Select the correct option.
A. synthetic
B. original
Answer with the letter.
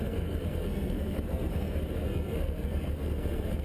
A